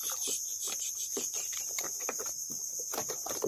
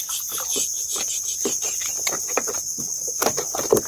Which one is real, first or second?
second